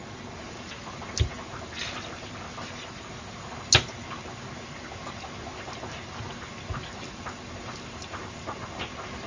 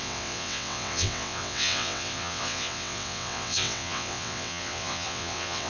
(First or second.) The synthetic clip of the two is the second